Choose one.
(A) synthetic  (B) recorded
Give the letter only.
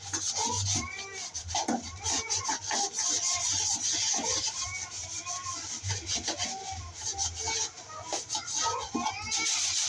B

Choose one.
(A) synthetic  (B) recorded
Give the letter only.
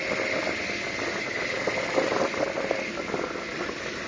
B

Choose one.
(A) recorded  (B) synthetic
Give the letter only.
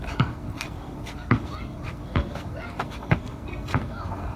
B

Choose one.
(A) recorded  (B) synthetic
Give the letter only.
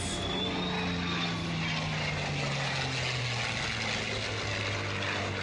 A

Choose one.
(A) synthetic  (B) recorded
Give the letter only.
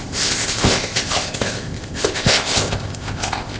A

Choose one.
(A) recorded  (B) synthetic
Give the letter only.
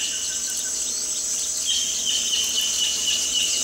A